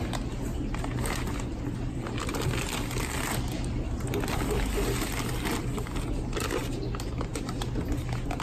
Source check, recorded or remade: recorded